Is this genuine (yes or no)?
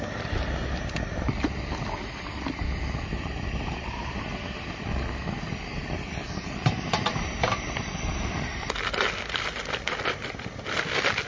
no